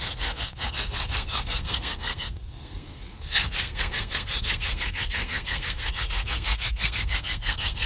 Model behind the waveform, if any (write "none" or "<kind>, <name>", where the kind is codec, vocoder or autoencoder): codec, SNAC